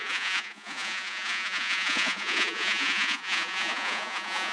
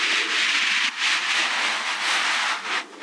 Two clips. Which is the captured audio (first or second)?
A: second